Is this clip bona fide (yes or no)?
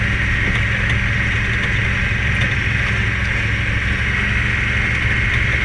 yes